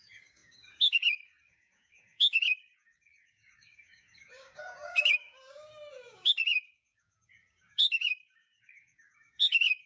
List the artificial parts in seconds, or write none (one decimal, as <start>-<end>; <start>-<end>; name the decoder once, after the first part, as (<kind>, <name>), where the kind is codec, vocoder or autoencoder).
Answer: 0.0-9.9 (codec, DAC)